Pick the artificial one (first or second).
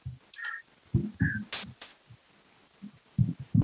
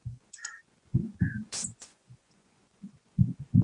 second